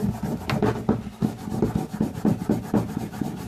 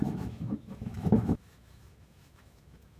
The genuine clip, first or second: first